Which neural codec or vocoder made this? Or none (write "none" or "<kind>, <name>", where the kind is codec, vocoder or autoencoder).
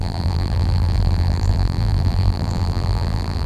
vocoder, BigVGAN v2